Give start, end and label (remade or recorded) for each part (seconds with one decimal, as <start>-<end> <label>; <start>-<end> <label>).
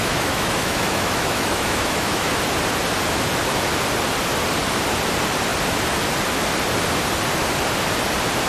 0.0-2.3 remade; 2.3-8.5 recorded